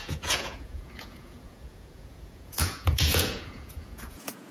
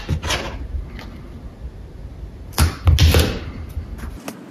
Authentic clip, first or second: second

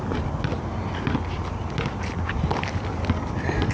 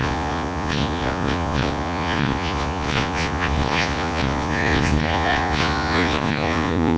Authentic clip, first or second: first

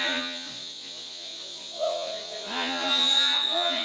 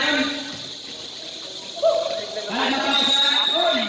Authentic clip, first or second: second